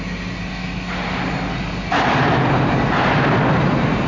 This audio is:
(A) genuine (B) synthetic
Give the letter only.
A